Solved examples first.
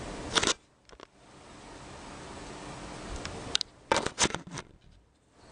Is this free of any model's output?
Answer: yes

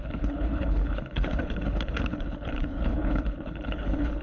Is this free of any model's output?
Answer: no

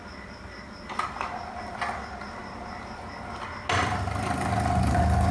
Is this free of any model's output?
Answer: yes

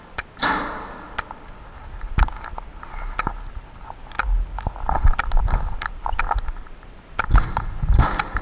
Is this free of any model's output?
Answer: yes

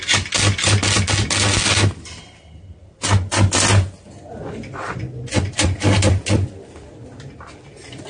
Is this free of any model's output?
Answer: yes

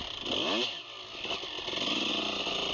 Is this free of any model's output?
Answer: yes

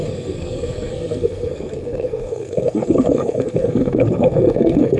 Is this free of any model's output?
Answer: no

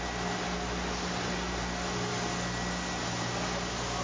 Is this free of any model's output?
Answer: yes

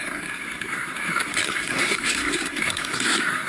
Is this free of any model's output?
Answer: no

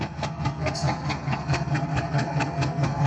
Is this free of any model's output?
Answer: no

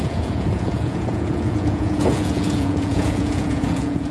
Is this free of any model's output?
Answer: no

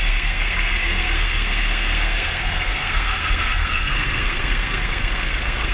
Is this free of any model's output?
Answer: no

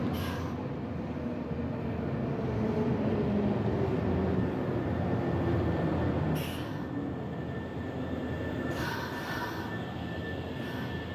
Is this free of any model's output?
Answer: yes